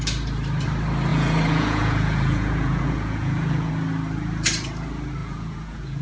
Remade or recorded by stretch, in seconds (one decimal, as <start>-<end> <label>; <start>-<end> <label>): 0.0-1.1 recorded; 1.1-3.7 remade; 3.7-5.2 recorded; 5.2-6.0 remade